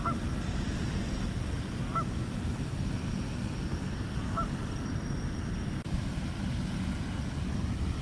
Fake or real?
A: real